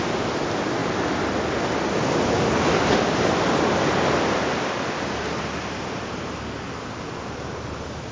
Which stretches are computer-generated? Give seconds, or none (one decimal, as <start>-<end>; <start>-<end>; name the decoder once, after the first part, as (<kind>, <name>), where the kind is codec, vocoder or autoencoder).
none